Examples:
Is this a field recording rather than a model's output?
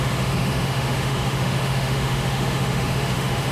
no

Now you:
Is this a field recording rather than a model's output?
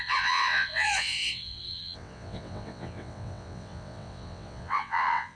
no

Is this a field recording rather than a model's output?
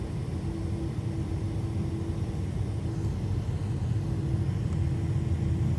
yes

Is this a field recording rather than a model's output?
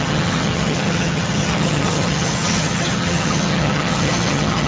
no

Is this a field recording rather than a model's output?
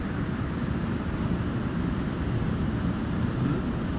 yes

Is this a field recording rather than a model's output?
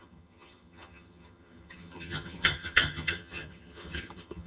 no